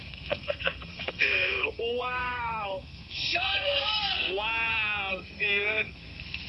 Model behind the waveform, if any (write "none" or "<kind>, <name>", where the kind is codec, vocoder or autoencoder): codec, SNAC